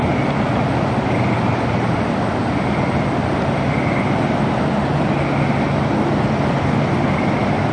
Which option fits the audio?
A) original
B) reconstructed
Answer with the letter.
A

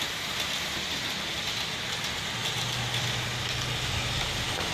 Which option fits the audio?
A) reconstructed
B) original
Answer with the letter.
B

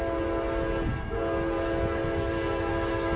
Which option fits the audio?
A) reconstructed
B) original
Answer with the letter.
B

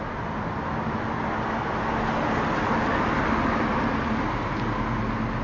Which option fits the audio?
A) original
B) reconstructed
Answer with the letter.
A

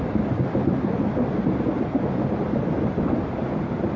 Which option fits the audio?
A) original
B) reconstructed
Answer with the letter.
A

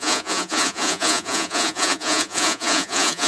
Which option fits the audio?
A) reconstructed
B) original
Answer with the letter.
A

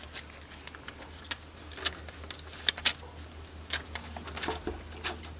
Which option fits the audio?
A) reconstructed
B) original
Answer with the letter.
B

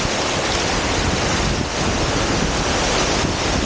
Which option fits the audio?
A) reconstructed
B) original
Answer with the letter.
B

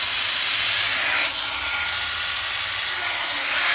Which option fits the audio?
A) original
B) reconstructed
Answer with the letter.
A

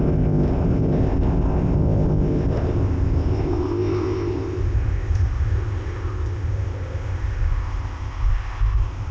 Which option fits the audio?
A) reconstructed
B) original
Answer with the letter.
A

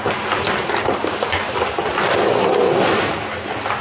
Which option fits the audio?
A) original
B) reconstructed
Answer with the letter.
A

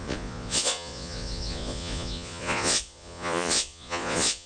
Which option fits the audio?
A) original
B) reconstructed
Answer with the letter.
B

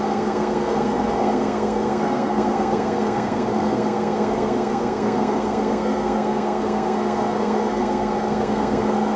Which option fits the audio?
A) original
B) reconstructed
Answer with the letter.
B